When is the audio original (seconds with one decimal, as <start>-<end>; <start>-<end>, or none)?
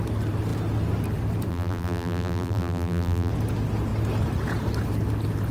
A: 0.0-1.5; 3.3-5.5